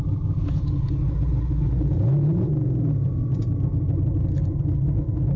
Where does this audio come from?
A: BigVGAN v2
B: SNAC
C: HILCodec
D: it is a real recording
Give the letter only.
D